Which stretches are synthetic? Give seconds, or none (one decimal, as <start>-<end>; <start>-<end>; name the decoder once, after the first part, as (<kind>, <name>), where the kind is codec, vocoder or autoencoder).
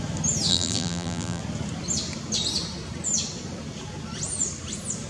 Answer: 0.5-1.4 (vocoder, BigVGAN v2)